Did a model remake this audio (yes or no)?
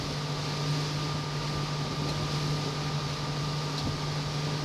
no